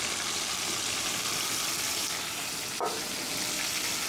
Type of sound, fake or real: real